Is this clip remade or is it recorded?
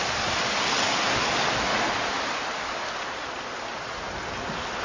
recorded